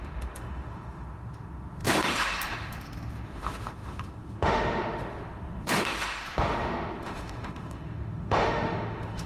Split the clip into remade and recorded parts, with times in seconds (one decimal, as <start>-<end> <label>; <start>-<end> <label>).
0.0-9.3 remade